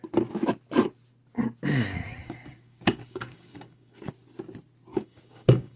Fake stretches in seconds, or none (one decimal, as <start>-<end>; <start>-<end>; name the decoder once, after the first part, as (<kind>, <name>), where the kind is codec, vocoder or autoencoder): 2.2-4.1 (codec, DAC); 4.9-5.8